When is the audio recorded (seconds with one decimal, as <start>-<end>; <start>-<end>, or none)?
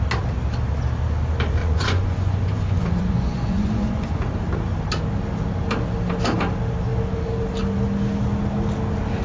0.0-1.6; 4.2-9.2